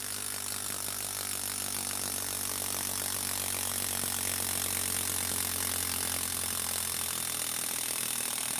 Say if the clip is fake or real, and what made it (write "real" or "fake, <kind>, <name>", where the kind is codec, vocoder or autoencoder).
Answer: real